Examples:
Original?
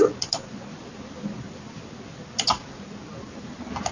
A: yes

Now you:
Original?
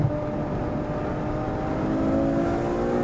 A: yes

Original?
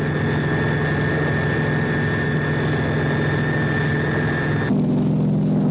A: yes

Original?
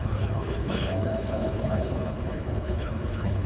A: no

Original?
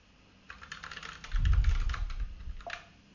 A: yes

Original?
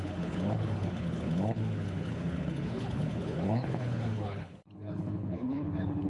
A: no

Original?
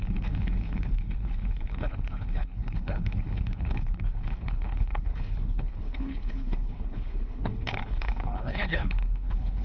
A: no